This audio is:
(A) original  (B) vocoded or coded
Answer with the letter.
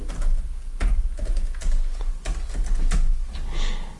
A